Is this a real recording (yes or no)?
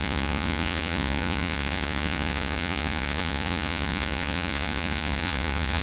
no